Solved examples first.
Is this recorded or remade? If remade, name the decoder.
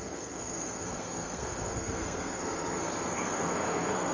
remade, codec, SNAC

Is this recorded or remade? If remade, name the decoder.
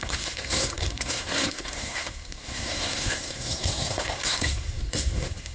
remade, codec, SNAC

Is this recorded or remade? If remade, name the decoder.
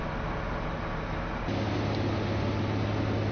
recorded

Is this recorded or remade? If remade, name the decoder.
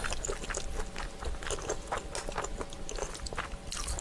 recorded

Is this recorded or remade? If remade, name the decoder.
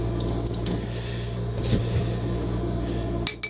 recorded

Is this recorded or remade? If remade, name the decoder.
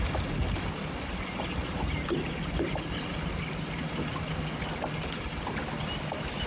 recorded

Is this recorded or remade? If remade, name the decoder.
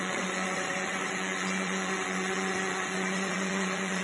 remade, vocoder, Vocos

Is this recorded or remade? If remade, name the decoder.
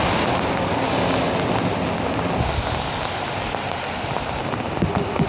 recorded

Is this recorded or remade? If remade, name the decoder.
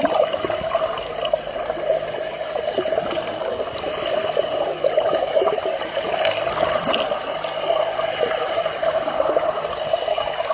recorded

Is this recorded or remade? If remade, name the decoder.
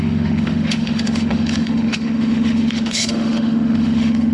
remade, autoencoder, DAC-VAE